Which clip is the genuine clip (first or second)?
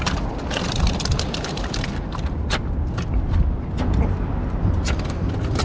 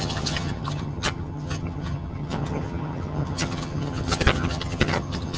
first